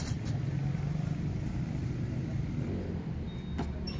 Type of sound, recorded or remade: recorded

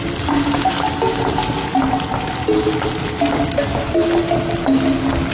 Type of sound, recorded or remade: recorded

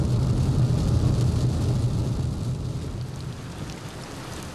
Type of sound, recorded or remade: recorded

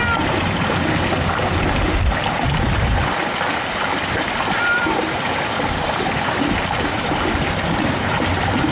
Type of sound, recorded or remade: recorded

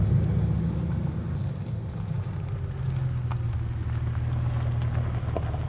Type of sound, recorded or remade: recorded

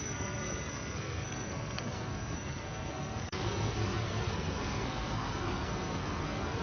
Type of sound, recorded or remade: remade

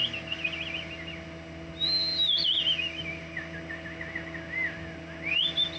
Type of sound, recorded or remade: recorded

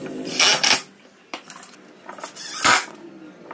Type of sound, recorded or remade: recorded